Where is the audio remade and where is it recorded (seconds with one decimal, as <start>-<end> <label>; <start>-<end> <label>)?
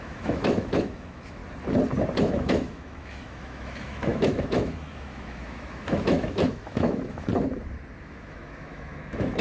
0.0-1.4 remade; 1.4-2.2 recorded; 2.2-7.3 remade; 7.3-8.0 recorded; 8.0-9.4 remade